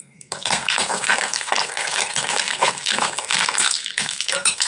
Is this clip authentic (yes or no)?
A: no